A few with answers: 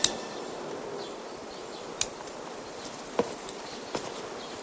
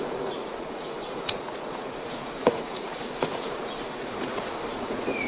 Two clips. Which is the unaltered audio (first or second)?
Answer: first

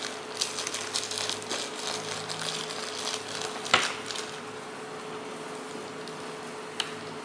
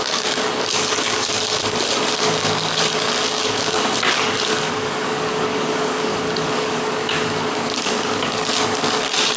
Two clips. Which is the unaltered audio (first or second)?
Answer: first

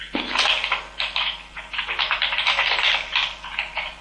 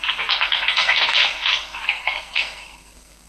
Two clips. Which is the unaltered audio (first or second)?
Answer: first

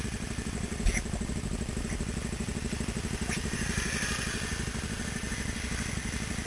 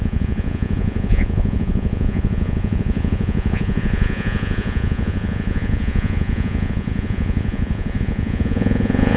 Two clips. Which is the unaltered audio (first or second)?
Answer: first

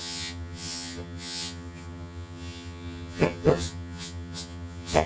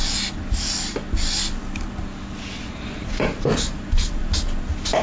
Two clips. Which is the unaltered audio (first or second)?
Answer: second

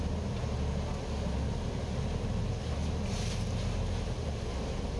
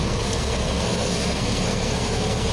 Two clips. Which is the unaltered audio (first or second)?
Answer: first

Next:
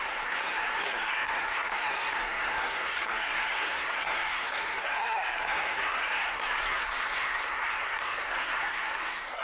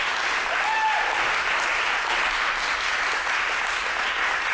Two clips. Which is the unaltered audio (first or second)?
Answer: second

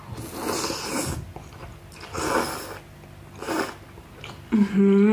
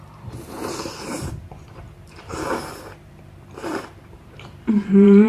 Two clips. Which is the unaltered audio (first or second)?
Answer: first